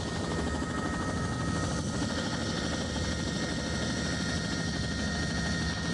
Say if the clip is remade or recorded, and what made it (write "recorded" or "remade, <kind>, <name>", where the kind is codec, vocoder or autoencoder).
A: recorded